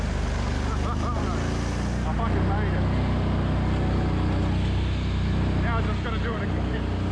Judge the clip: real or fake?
real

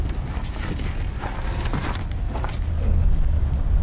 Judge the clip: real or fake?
real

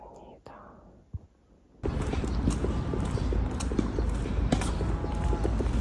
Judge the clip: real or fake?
real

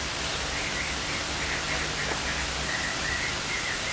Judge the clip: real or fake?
real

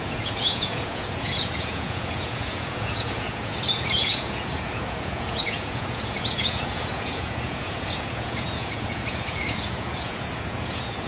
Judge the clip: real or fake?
fake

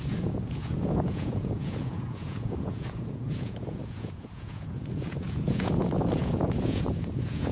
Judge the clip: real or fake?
fake